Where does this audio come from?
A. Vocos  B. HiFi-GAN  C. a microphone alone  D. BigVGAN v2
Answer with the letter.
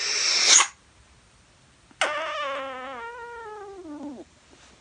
C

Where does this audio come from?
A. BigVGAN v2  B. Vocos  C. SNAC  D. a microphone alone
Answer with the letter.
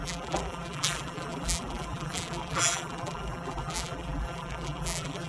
A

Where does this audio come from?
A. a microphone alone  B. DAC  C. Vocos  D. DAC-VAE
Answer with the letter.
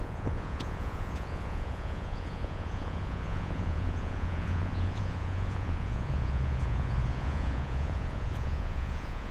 C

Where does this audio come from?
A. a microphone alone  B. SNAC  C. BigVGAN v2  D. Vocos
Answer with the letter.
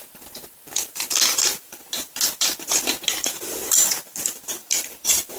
C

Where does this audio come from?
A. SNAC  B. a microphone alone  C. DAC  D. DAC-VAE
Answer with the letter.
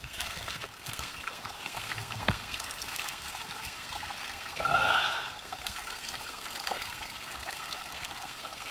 A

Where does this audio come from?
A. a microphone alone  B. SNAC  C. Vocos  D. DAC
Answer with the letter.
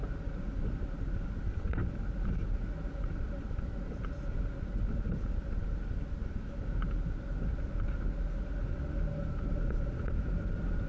A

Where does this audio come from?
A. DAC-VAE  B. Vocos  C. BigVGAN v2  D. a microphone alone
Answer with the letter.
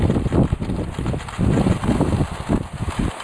D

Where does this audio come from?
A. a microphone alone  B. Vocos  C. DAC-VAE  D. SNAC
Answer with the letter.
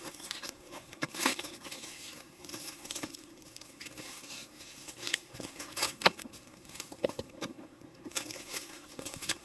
D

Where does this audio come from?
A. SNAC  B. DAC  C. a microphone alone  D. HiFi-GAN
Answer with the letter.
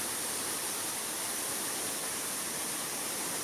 C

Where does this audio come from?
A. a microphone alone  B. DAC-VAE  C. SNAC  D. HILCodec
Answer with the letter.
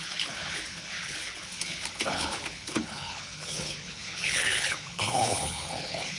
D